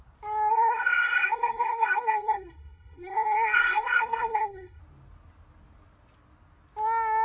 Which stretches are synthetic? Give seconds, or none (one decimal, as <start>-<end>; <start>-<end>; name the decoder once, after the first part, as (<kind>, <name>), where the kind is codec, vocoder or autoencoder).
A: 0.5-4.8 (codec, SNAC)